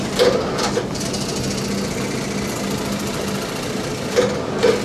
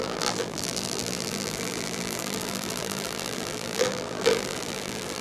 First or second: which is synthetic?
second